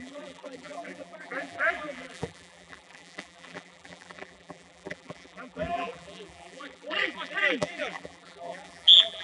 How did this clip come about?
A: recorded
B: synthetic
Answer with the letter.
B